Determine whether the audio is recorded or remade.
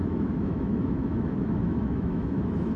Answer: remade